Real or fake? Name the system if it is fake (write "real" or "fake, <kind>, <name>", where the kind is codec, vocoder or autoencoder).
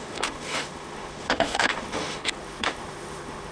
fake, autoencoder, DAC-VAE